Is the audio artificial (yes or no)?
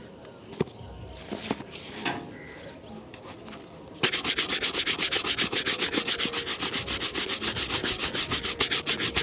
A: no